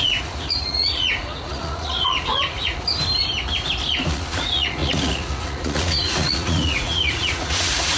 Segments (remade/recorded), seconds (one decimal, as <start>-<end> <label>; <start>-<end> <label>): 0.0-2.9 remade; 2.9-4.1 recorded; 4.1-8.0 remade